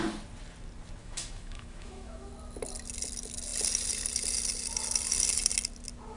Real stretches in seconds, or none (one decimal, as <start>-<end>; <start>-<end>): 0.0-1.0; 2.3-6.2